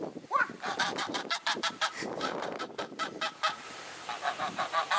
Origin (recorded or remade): remade